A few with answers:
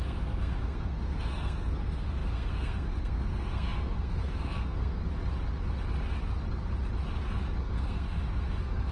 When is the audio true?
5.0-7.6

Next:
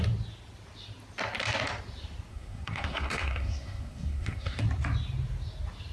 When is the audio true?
0.0-2.3; 4.6-5.9

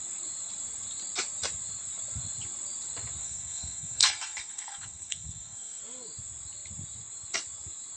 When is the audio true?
0.0-3.2; 5.8-8.0

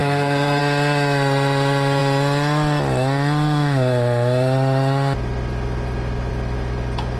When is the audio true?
0.6-7.2